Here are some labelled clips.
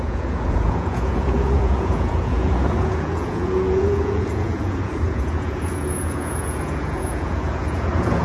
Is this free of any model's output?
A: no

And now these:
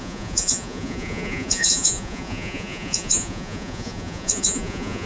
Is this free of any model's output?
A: no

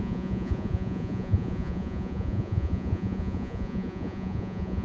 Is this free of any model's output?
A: no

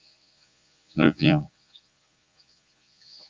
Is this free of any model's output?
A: no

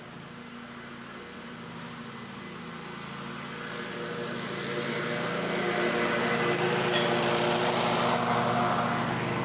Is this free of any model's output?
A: yes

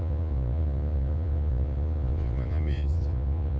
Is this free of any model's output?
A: no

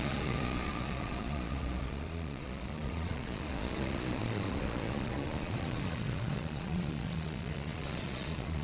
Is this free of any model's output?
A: no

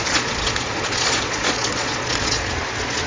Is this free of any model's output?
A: no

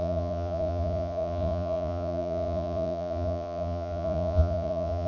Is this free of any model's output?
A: no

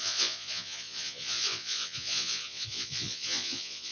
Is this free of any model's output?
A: no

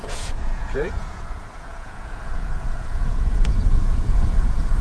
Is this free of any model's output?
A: no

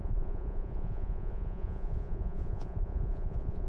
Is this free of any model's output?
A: no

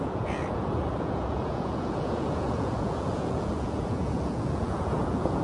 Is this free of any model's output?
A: no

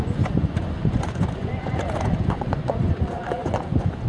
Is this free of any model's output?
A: no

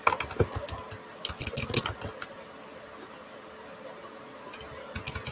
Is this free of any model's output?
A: yes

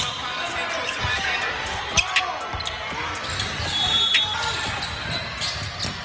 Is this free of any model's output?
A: yes